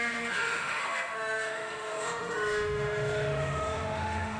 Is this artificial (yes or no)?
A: yes